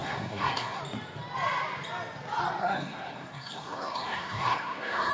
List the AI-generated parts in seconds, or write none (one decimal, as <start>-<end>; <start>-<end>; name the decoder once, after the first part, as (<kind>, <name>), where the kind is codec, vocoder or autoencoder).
0.0-0.8 (codec, SNAC); 2.6-5.1